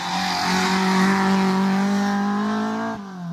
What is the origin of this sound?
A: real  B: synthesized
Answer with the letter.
A